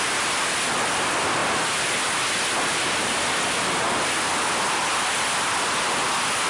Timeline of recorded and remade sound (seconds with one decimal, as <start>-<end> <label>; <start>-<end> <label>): 0.0-6.5 recorded